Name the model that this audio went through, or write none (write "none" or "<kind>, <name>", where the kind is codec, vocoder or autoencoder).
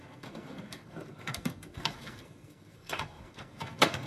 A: codec, SNAC